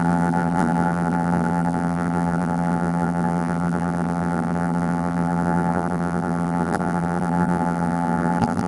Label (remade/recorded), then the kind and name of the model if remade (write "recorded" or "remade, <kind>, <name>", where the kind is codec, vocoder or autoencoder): remade, vocoder, BigVGAN v2